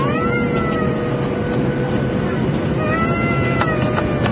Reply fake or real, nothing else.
real